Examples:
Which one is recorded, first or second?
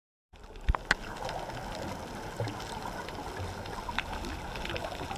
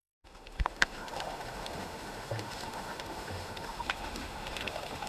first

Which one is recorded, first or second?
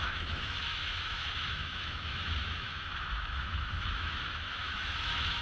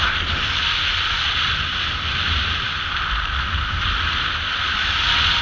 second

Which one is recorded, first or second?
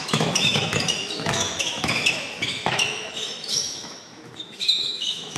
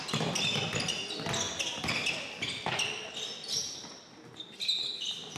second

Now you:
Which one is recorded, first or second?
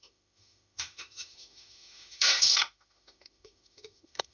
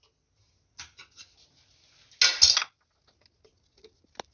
second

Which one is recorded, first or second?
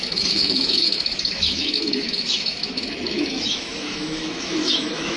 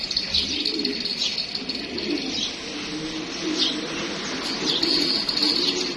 second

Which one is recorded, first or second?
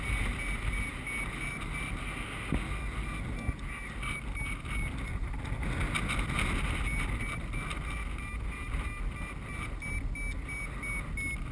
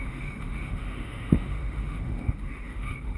first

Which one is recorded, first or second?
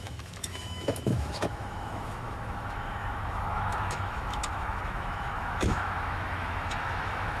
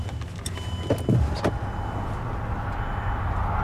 second